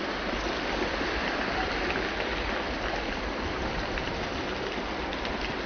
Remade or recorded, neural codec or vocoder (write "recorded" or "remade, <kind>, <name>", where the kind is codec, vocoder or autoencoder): recorded